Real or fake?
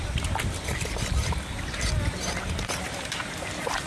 real